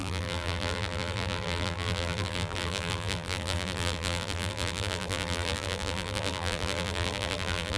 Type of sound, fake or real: fake